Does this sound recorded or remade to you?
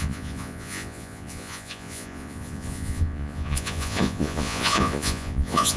remade